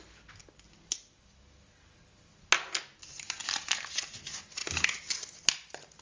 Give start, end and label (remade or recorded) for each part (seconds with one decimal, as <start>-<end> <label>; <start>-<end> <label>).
0.0-6.0 recorded